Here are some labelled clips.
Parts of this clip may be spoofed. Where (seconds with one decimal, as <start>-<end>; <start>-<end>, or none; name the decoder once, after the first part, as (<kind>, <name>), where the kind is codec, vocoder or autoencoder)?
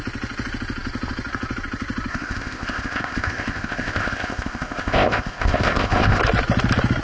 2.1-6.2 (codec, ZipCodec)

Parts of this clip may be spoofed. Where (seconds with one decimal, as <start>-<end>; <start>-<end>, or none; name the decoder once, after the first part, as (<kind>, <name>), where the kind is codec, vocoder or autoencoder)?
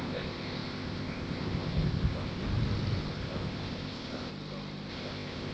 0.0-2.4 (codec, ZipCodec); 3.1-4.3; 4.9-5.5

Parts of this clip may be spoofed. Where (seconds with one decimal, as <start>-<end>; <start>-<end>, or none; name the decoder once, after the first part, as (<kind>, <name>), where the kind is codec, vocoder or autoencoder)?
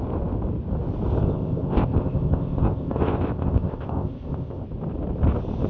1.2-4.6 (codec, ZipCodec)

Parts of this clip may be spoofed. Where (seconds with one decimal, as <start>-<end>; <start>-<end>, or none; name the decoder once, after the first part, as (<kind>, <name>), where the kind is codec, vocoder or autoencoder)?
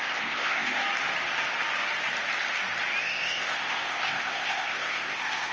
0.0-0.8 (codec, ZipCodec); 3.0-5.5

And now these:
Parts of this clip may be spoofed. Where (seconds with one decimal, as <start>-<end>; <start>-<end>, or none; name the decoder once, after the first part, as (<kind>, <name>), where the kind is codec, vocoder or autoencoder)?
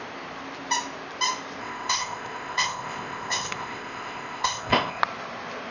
1.6-5.0 (codec, ZipCodec)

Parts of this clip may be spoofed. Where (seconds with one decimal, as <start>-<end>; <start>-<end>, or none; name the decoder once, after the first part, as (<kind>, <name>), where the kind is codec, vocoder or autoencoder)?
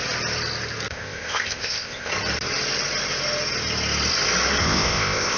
0.9-2.1 (codec, ZipCodec); 4.6-5.4